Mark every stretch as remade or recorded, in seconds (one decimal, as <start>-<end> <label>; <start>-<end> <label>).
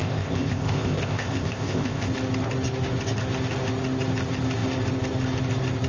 0.0-2.1 remade; 2.1-5.9 recorded